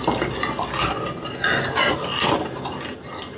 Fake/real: real